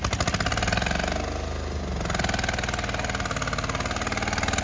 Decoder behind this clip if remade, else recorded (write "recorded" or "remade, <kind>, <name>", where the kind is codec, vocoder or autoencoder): recorded